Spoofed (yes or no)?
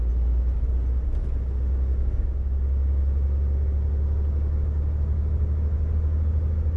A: no